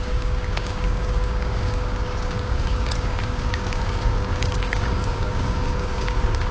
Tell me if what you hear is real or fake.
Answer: fake